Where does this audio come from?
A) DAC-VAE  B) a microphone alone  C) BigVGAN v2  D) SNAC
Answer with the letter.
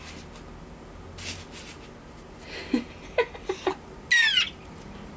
B